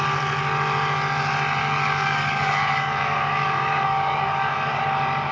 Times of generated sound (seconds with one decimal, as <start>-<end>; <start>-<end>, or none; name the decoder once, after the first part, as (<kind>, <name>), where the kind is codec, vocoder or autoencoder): 1.6-4.8 (codec, DAC)